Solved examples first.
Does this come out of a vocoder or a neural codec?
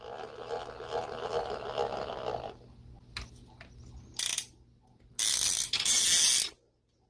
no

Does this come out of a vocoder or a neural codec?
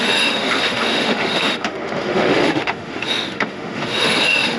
yes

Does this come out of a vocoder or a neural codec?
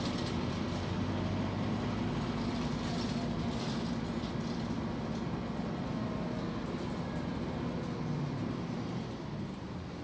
no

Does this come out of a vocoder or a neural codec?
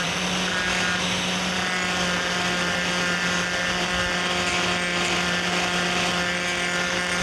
no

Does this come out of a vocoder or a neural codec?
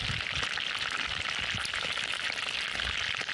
no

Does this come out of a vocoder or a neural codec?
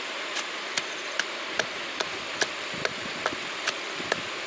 no